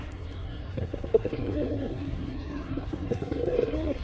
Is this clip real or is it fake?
fake